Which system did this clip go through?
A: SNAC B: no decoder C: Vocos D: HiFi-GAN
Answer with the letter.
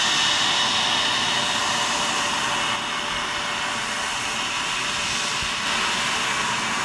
B